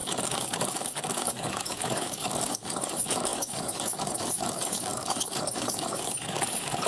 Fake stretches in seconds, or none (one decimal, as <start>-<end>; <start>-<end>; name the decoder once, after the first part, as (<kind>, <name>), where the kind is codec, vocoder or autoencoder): 0.0-6.9 (codec, DAC)